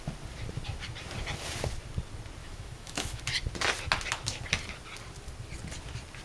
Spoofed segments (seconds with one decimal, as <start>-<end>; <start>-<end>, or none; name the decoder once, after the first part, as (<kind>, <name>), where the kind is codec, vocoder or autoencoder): 2.4-3.2 (autoencoder, DAC-VAE)